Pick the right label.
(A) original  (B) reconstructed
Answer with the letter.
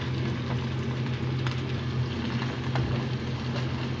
A